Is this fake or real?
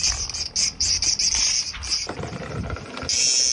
real